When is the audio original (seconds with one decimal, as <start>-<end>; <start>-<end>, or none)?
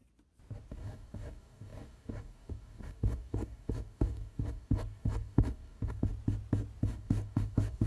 0.0-0.7; 6.1-6.9